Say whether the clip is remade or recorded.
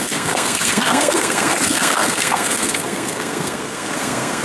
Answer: remade